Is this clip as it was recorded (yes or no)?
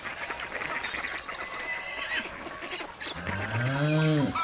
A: yes